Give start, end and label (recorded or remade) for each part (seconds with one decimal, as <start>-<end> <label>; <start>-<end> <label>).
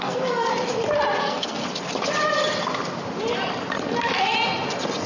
0.0-0.5 remade; 0.5-1.2 recorded; 1.2-1.6 remade; 1.6-5.1 recorded